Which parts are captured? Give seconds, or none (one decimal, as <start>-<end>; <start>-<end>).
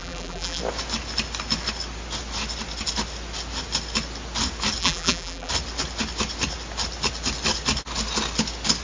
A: 0.6-4.8; 5.5-8.8